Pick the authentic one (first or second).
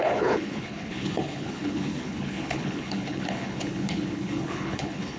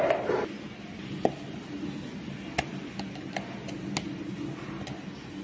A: second